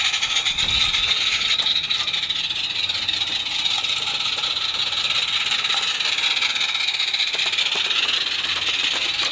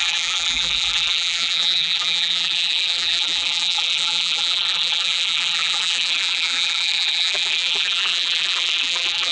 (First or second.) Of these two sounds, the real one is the first